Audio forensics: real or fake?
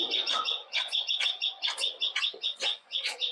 fake